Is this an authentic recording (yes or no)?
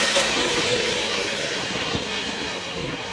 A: no